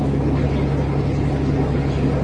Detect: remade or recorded recorded